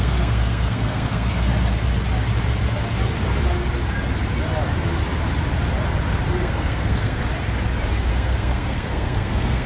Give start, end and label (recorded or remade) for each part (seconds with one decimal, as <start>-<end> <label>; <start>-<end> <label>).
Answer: 0.0-1.5 remade; 1.5-6.4 recorded; 6.4-7.2 remade; 7.2-8.1 recorded; 8.1-9.7 remade